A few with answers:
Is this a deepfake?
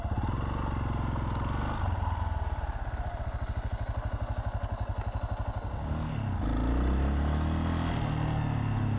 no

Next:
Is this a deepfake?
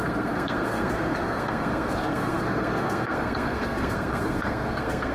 yes